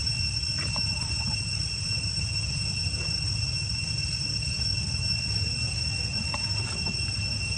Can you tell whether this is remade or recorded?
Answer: recorded